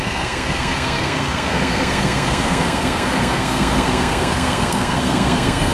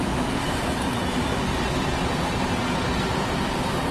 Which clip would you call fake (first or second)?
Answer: first